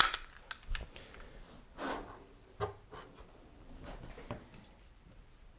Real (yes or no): yes